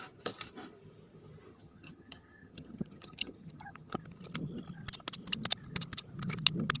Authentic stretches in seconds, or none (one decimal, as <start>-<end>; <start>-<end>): 0.0-1.5; 4.0-6.8